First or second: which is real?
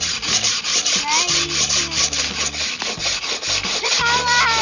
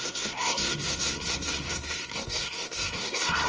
first